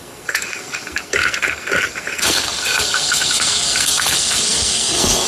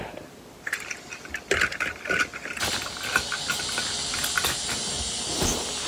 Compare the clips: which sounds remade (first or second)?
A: first